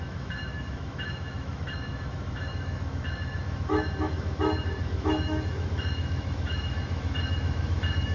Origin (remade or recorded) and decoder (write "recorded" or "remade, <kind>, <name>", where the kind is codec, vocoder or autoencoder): remade, autoencoder, DAC-VAE